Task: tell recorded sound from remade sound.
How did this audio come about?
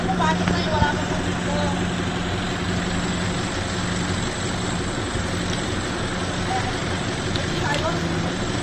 recorded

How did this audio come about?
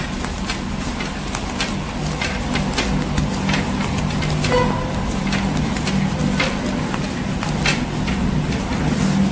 recorded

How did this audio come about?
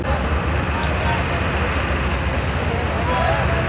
recorded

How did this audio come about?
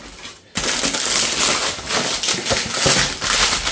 recorded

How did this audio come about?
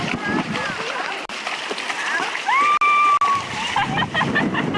recorded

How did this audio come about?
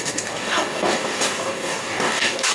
remade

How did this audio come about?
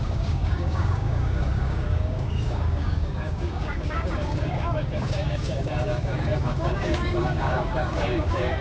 remade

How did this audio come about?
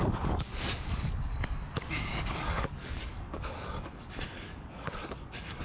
remade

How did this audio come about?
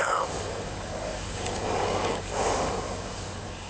remade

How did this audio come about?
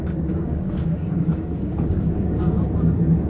remade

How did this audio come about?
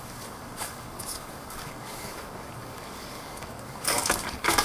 remade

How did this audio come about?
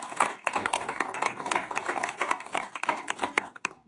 remade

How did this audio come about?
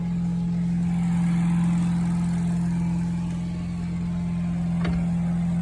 recorded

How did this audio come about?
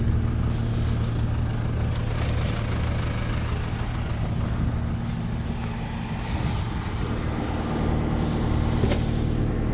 recorded